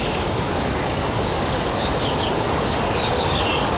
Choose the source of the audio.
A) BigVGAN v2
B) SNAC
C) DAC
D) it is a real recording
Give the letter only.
C